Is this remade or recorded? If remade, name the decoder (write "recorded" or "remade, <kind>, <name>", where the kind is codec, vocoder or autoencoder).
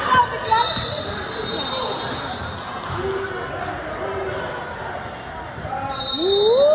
recorded